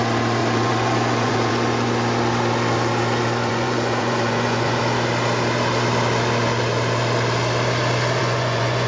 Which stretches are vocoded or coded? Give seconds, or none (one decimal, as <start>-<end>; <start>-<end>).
0.4-1.5; 3.5-4.8; 8.2-8.9